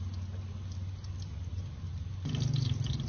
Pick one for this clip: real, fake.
real